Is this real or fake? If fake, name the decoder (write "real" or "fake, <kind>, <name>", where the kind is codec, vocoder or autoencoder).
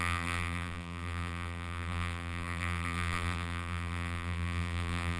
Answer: fake, vocoder, BigVGAN v2